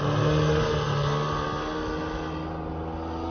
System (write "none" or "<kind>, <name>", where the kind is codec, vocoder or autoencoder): none